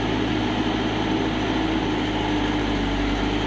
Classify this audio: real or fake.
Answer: real